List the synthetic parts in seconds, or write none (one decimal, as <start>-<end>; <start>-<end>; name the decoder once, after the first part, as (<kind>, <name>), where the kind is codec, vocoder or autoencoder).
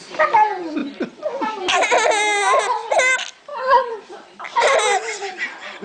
3.5-5.3 (vocoder, BigVGAN v2)